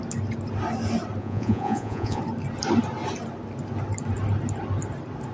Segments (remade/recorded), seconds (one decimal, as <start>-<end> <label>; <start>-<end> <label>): 0.0-1.2 recorded; 1.2-2.2 remade; 2.2-5.3 recorded